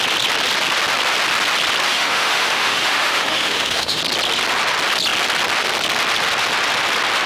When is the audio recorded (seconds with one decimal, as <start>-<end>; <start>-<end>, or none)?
0.0-1.9; 4.0-7.3